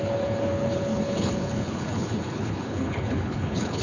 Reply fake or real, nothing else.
fake